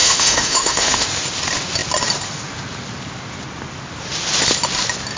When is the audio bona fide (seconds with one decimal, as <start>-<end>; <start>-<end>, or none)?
1.1-5.2